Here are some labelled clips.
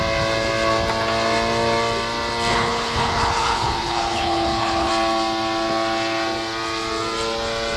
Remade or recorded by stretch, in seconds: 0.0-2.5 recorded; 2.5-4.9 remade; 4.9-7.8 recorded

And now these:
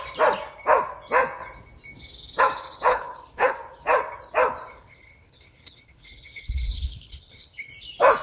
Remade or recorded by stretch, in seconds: 0.0-2.9 recorded; 2.9-3.5 remade; 3.5-4.7 recorded; 4.7-7.7 remade; 7.7-8.2 recorded

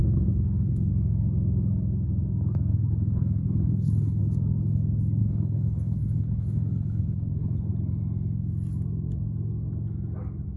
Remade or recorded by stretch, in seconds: 0.0-0.9 remade; 0.9-2.7 recorded; 2.7-4.2 remade; 4.2-5.2 recorded; 5.2-7.7 remade; 7.7-10.6 recorded

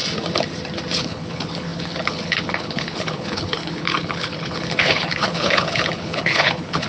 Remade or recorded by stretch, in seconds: 0.0-1.0 recorded; 1.0-6.9 remade